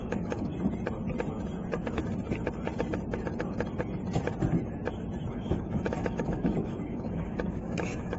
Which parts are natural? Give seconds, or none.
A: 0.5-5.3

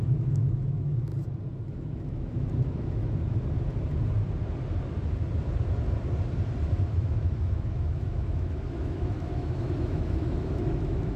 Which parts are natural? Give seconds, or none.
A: 1.1-1.7; 3.0-6.6

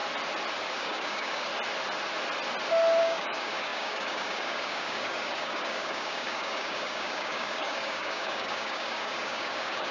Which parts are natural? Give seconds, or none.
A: 0.0-0.7; 1.5-3.0

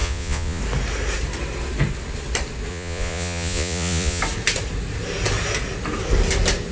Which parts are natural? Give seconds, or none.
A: 0.6-2.7; 4.2-6.7

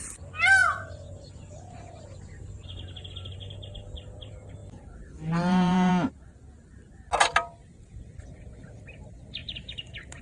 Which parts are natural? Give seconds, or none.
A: 0.0-0.6; 2.4-4.6; 5.9-7.2; 7.9-9.4

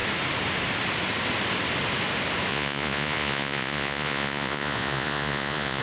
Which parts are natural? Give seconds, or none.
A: 0.0-2.5

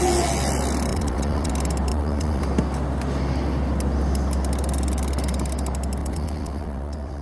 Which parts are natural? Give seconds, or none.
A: 0.0-0.9; 1.5-1.9; 2.4-6.0

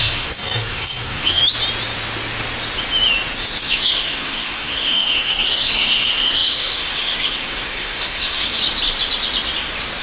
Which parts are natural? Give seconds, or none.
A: 1.4-3.6; 8.6-10.0